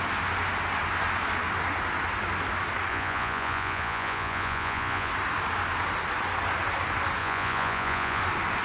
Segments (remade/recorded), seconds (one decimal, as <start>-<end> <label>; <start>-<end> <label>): 0.0-2.9 recorded; 2.9-5.1 remade; 5.1-7.2 recorded; 7.2-8.2 remade; 8.2-8.6 recorded